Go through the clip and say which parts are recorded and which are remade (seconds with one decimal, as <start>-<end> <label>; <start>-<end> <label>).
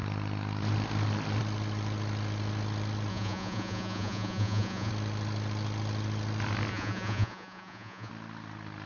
0.0-3.1 recorded; 3.1-4.9 remade; 4.9-6.7 recorded; 6.7-8.1 remade; 8.1-8.9 recorded